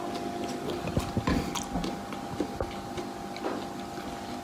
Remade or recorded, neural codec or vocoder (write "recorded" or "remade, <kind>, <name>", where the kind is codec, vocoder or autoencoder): recorded